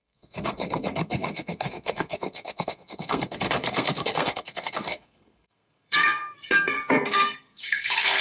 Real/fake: fake